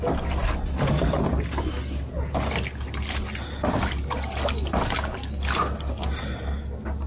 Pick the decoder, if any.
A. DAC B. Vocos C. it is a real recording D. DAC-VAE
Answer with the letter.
C